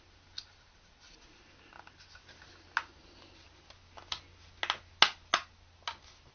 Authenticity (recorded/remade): recorded